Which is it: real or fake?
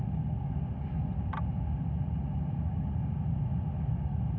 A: real